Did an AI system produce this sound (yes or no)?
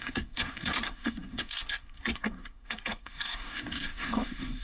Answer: yes